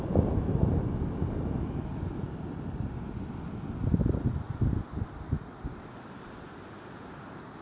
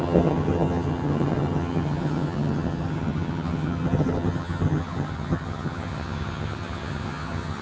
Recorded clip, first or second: first